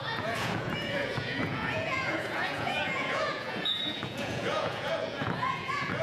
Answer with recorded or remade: remade